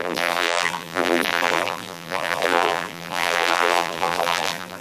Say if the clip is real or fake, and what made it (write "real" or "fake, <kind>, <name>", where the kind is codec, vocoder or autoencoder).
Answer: fake, vocoder, BigVGAN v2